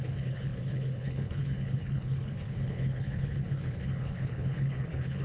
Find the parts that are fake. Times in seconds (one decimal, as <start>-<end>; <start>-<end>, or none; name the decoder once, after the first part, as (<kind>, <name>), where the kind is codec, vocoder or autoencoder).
0.0-5.2 (codec, HILCodec)